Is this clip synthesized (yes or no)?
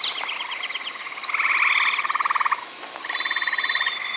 no